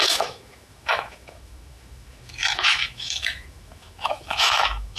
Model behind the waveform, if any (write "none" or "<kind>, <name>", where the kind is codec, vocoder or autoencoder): autoencoder, DAC-VAE